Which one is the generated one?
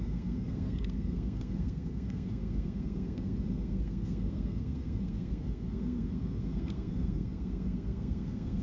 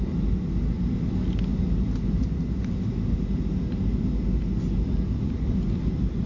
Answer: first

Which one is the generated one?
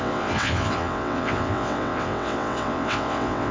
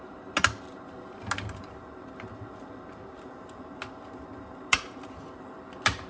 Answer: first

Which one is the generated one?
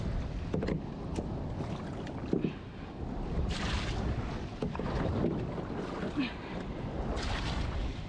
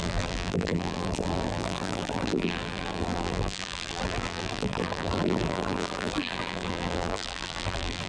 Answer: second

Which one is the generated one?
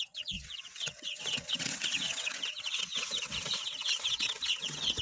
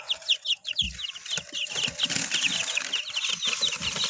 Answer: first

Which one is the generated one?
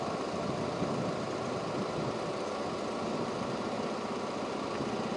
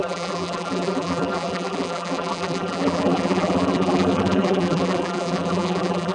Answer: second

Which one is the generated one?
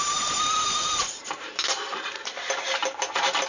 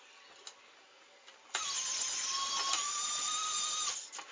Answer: first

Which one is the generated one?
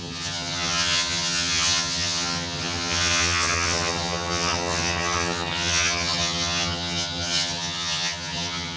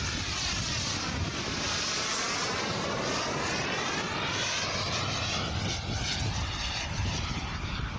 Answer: first